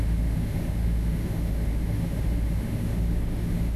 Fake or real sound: fake